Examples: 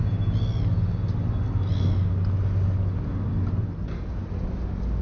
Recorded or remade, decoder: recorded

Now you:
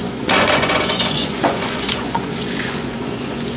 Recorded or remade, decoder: remade, vocoder, Vocos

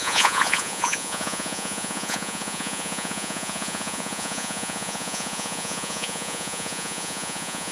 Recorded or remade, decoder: remade, vocoder, Vocos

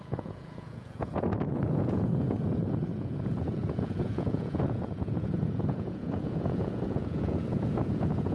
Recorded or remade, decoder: remade, vocoder, Vocos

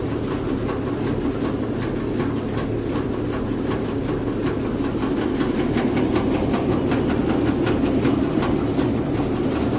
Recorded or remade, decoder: recorded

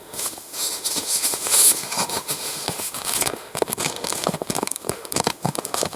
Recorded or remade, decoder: remade, autoencoder, DAC-VAE